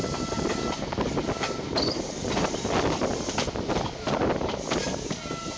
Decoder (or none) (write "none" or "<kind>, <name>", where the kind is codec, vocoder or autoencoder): none